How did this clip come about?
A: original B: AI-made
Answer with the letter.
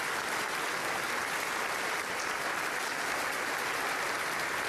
A